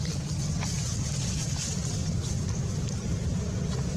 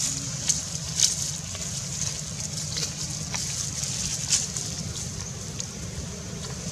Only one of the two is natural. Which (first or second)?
second